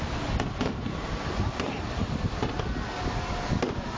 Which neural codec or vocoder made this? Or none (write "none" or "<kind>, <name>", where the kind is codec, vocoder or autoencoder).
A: none